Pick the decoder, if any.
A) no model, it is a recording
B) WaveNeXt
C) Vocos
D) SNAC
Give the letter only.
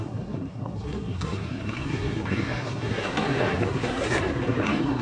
D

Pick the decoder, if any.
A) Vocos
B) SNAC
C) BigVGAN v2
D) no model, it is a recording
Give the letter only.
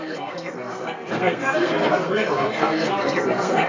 B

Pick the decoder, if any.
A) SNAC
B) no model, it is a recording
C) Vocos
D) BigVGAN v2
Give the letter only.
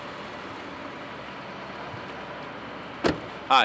B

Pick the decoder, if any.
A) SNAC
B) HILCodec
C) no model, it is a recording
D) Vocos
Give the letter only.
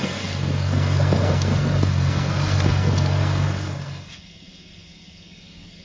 A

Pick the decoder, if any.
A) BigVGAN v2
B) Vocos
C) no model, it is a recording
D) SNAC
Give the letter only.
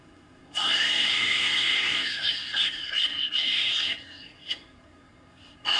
D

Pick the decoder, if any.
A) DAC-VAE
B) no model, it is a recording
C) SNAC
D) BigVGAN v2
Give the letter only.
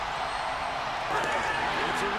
B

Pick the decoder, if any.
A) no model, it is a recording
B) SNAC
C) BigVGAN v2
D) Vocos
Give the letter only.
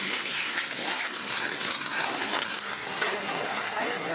B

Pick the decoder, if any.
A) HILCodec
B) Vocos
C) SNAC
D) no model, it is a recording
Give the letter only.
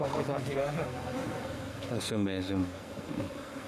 C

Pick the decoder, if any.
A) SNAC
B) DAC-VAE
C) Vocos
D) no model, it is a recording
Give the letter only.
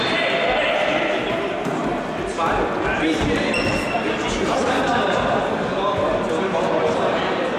D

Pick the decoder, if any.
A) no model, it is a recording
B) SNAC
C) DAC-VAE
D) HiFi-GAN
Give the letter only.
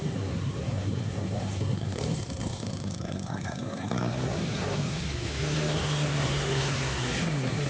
B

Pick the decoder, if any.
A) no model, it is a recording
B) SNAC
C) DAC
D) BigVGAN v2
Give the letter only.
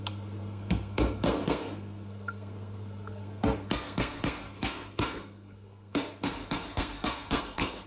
B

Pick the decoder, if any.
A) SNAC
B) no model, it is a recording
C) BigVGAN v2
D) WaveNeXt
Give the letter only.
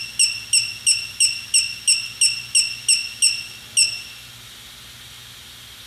B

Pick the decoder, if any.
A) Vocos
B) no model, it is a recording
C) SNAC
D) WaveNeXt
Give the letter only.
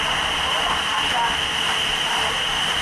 B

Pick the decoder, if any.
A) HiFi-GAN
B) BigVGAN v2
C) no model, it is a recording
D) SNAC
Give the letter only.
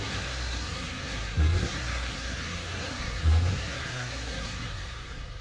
D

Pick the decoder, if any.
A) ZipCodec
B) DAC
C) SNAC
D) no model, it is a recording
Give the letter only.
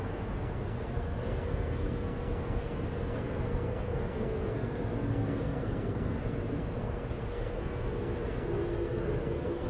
C